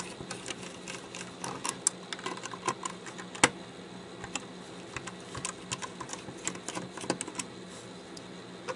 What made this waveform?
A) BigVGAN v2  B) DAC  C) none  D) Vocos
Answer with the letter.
C